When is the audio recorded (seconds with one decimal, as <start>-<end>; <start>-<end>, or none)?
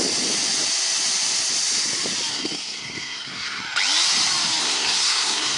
0.0-2.3; 3.6-4.6